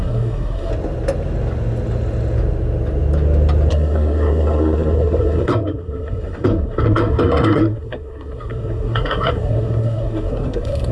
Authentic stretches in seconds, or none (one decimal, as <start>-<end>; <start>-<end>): 0.7-3.7